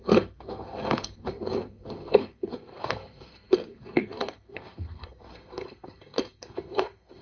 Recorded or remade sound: remade